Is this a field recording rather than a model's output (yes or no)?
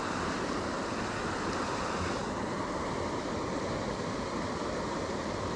yes